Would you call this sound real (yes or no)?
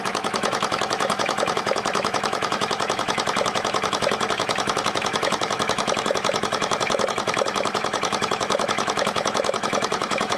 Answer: no